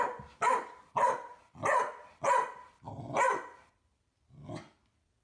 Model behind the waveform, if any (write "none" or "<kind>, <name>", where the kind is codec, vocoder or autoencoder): none